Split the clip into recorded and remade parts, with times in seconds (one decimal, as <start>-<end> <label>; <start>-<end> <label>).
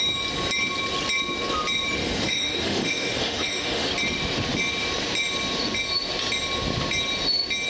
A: 0.0-2.0 recorded; 2.0-3.9 remade; 3.9-7.7 recorded